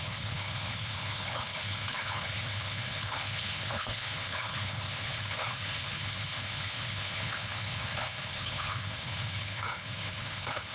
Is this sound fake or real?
fake